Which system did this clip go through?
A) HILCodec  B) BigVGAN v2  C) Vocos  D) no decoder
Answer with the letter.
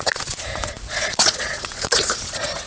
C